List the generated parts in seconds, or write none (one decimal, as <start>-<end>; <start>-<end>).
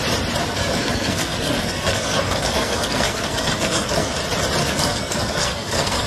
0.4-4.1; 4.6-6.1